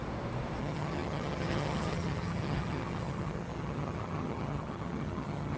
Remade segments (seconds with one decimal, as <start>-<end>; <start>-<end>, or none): 0.6-5.6